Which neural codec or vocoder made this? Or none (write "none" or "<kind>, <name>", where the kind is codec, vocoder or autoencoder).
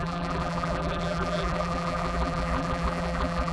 vocoder, BigVGAN v2